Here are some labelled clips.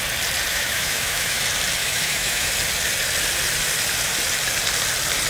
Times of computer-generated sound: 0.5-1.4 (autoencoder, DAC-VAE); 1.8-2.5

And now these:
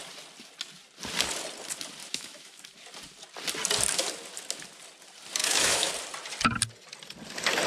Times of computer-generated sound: 2.0-2.6 (autoencoder, DAC-VAE); 5.4-5.9

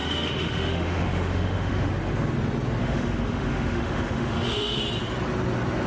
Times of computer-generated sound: 0.0-1.9 (autoencoder, DAC-VAE); 2.8-4.8

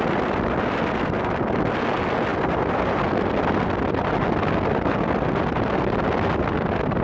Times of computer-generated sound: none

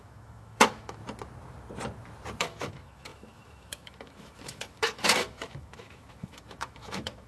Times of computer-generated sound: 0.0-1.0 (autoencoder, DAC-VAE); 2.4-7.3

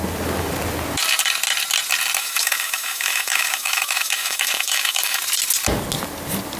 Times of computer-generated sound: 2.2-5.2 (autoencoder, DAC-VAE)